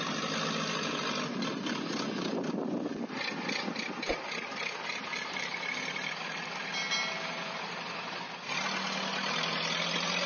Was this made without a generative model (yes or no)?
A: yes